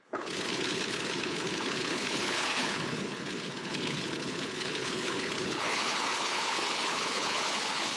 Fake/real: fake